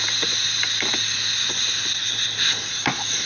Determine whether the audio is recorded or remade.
recorded